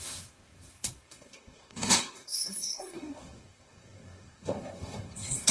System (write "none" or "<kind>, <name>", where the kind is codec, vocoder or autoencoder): codec, SNAC